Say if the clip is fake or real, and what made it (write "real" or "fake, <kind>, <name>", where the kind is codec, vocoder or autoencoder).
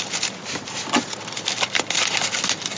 real